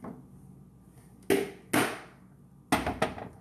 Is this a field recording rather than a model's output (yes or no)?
yes